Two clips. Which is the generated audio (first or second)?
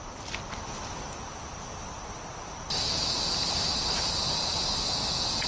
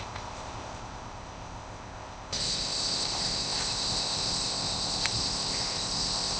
second